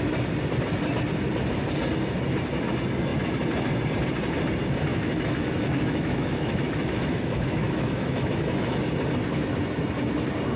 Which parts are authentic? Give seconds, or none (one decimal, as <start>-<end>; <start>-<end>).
0.0-4.9; 8.8-10.6